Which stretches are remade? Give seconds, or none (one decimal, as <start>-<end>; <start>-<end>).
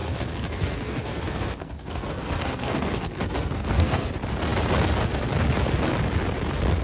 0.0-4.1